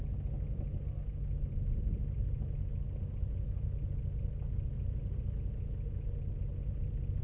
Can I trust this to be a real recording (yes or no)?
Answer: yes